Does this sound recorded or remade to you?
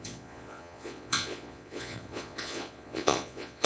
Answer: remade